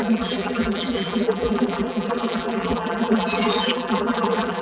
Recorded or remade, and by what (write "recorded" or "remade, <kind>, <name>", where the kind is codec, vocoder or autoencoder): remade, vocoder, BigVGAN v2